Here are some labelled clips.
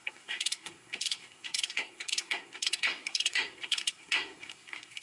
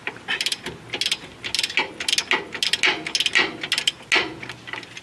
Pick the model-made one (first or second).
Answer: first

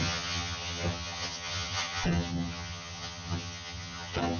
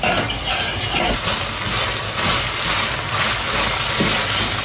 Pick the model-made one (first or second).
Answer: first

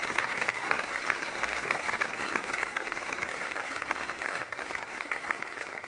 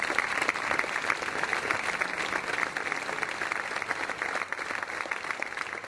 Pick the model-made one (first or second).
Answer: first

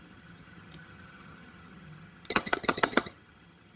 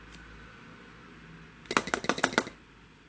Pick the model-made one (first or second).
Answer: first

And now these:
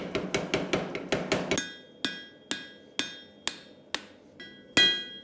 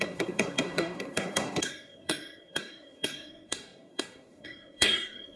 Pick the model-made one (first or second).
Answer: second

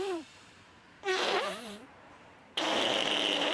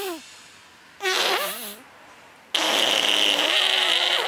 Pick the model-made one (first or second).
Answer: first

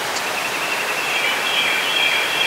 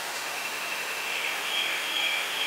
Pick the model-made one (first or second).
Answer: second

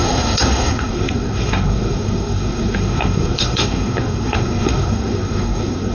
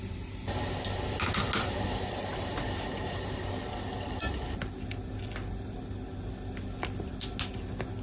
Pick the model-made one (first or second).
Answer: first